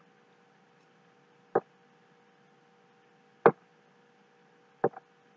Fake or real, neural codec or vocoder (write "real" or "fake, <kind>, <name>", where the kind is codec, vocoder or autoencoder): real